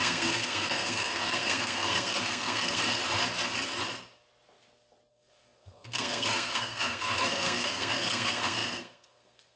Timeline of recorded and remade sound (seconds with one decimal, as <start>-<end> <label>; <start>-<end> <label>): 0.0-3.0 remade; 3.0-5.1 recorded; 5.1-9.6 remade